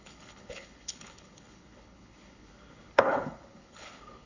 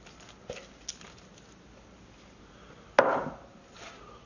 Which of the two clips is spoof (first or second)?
first